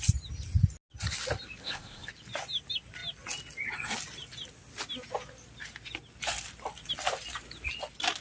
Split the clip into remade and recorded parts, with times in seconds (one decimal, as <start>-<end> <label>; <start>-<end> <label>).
0.0-1.6 recorded; 1.6-2.1 remade; 2.1-8.2 recorded